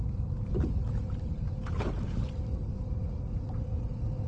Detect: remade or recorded recorded